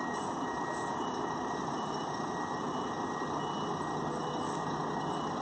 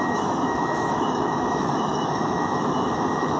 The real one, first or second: first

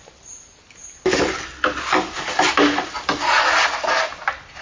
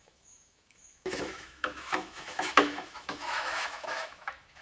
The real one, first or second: first